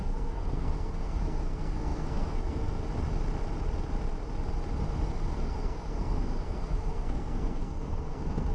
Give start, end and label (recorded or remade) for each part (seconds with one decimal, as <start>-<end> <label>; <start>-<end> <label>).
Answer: 0.0-2.8 remade; 2.8-5.3 recorded; 5.3-8.5 remade